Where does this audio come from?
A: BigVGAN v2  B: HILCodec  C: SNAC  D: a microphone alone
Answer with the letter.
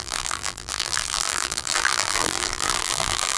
A